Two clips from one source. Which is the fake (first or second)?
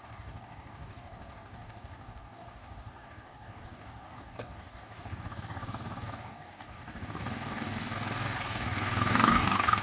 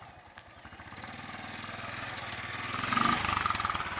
first